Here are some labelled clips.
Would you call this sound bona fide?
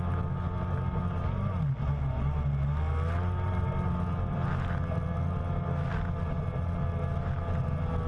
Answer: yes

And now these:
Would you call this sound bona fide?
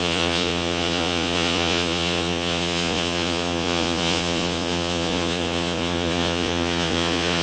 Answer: no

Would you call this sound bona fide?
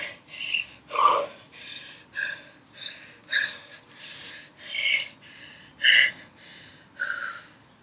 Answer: yes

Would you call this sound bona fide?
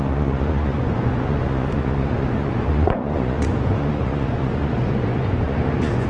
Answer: no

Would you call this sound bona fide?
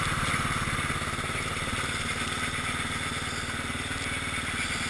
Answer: yes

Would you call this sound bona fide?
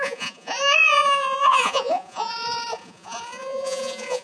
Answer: no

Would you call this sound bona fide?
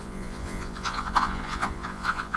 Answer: no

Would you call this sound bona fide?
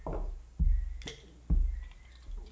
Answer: yes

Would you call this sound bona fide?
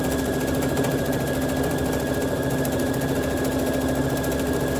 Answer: yes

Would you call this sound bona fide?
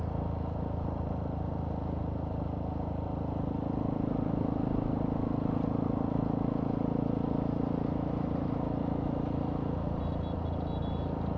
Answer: yes